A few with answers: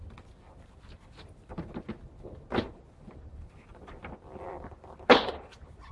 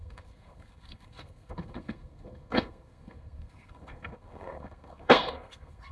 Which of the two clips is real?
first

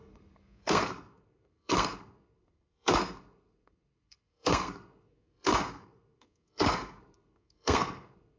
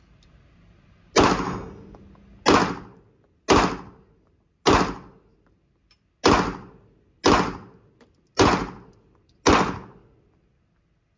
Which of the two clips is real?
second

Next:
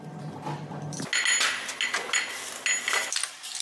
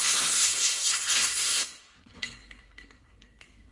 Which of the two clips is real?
first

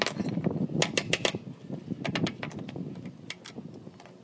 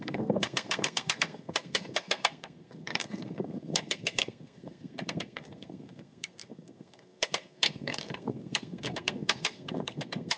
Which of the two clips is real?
first